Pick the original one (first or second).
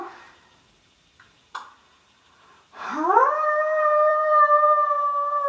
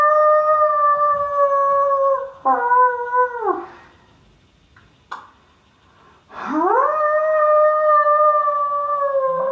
second